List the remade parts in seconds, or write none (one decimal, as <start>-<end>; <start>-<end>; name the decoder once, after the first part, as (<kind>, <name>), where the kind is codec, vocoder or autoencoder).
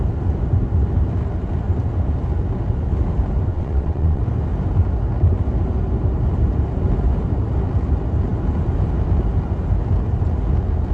3.5-4.2 (vocoder, WaveNeXt)